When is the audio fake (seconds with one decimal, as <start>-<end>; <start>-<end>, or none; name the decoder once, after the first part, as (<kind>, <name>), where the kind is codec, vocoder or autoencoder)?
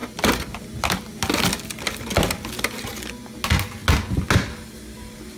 none